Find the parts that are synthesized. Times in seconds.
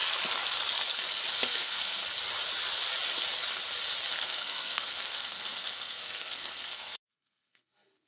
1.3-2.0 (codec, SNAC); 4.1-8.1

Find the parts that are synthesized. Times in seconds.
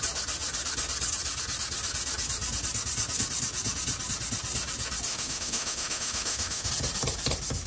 5.1-6.7 (autoencoder, DAC-VAE)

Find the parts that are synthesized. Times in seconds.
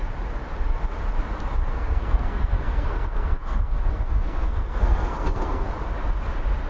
1.7-5.7 (codec, SNAC)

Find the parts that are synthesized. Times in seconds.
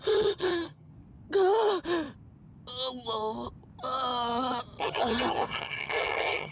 0.0-0.9 (vocoder, HiFi-GAN); 4.8-6.5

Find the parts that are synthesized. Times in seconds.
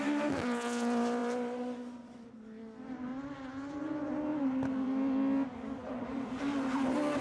0.0-3.1 (vocoder, BigVGAN v2); 3.7-7.2